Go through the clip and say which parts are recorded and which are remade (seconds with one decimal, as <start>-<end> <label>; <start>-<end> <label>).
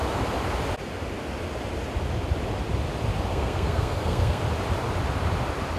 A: 0.0-3.3 recorded; 3.3-4.4 remade; 4.4-5.8 recorded